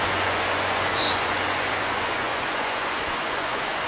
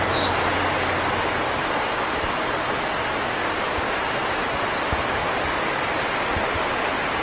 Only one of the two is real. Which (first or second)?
second